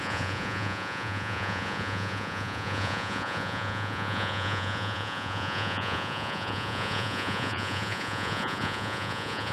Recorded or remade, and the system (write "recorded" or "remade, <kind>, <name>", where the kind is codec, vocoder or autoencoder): remade, vocoder, Vocos